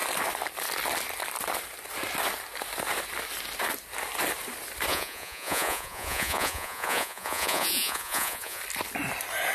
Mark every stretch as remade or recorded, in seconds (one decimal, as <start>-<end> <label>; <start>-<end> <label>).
0.0-4.9 recorded; 4.9-8.6 remade; 8.6-9.5 recorded